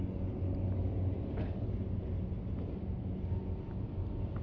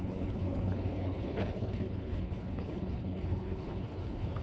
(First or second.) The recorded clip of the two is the first